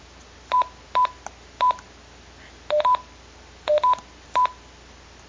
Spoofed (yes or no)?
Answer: no